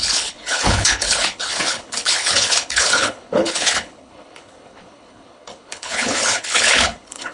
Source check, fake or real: fake